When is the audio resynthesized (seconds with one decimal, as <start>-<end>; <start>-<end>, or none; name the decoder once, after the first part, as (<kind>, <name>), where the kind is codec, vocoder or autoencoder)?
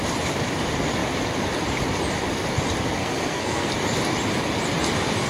3.0-3.7 (codec, SNAC)